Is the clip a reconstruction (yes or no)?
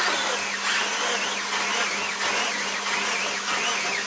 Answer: no